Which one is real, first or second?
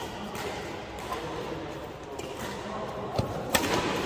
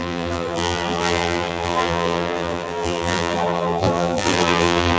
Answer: first